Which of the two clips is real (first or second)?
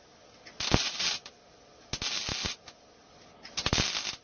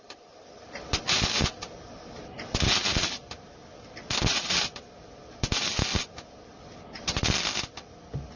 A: first